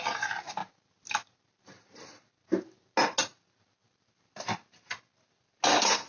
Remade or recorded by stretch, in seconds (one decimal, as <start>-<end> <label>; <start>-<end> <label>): 0.0-6.1 recorded